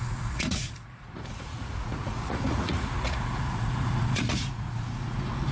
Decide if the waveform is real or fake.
fake